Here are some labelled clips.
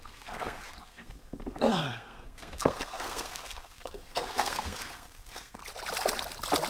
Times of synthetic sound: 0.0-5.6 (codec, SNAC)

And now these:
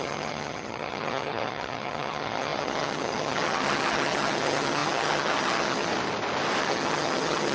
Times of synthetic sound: 0.0-5.9 (vocoder, HiFi-GAN); 6.6-7.5

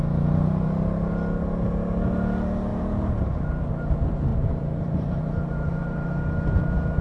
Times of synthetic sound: 2.7-3.4 (vocoder, BigVGAN v2); 4.3-6.1

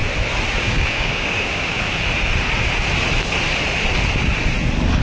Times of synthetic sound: 0.6-1.9 (codec, DAC)

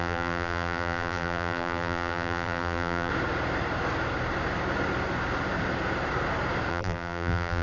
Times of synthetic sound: 0.0-3.1 (vocoder, BigVGAN v2); 6.7-7.6

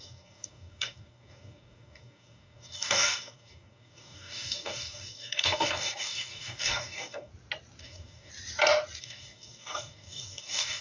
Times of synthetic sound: 0.0-7.3 (codec, DAC); 7.8-8.3; 9.0-10.8